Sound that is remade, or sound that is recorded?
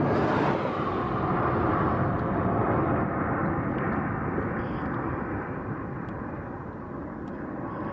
recorded